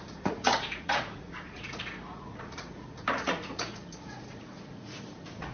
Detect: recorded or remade remade